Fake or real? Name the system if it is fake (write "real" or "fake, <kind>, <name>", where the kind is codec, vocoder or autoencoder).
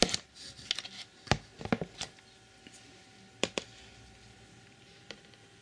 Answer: real